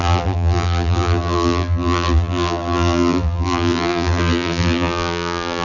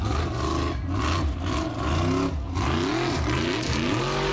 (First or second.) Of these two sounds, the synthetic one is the first